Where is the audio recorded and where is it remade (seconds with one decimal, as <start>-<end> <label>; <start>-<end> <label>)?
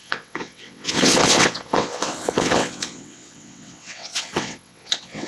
0.0-5.3 remade